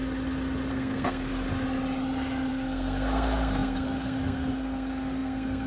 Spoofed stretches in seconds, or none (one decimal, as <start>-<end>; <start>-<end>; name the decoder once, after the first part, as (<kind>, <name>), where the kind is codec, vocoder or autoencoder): 0.7-1.3 (codec, SNAC); 2.5-5.7